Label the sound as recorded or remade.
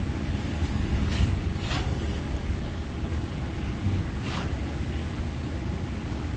remade